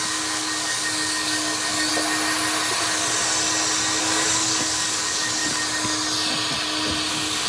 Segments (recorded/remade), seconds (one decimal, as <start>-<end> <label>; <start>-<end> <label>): 0.0-1.9 remade; 1.9-4.0 recorded; 4.0-5.4 remade; 5.4-7.1 recorded; 7.1-7.5 remade